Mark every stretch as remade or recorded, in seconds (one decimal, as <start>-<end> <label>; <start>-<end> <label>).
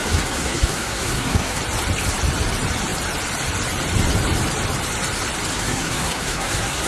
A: 0.0-1.6 remade; 1.6-5.5 recorded; 5.5-6.9 remade